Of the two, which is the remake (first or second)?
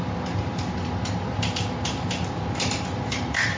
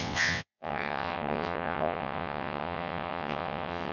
second